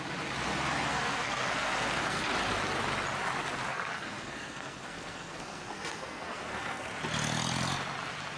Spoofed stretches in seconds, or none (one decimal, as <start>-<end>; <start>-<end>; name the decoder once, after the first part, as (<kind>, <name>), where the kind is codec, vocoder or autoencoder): 0.9-2.2 (codec, SNAC); 3.7-7.0